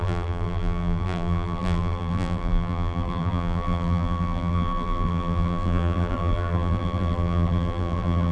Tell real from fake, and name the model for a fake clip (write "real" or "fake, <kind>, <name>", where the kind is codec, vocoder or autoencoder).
fake, vocoder, BigVGAN v2